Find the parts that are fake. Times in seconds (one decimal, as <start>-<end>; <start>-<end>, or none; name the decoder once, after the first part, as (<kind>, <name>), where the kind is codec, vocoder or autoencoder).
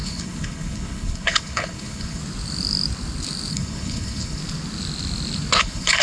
0.0-2.2 (codec, HILCodec); 3.5-4.4; 5.6-6.0